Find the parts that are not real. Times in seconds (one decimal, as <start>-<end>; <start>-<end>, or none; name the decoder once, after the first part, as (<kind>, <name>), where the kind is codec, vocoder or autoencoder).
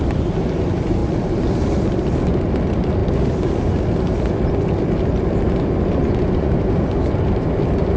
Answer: 6.0-6.5 (vocoder, Vocos)